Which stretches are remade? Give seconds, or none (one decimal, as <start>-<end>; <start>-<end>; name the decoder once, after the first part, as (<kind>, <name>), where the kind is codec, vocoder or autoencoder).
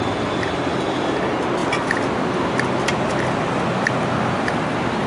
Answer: none